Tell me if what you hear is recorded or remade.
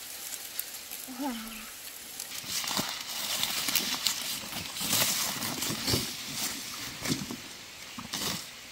recorded